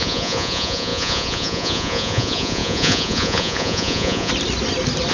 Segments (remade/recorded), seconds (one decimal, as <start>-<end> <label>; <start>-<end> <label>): 0.0-4.3 remade; 4.3-5.1 recorded